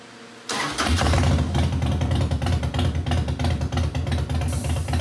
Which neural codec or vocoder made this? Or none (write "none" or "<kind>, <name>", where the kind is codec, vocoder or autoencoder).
none